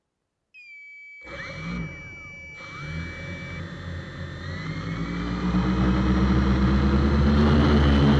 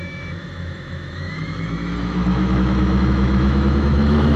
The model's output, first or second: second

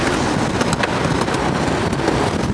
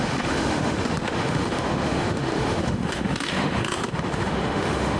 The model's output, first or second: second